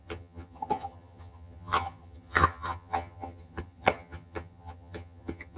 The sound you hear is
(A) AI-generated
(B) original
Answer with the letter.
A